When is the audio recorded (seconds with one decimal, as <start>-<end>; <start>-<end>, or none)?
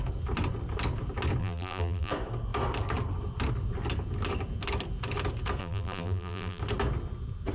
0.0-1.4; 2.1-5.6; 6.6-7.5